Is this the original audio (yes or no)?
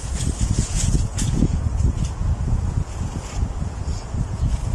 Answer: no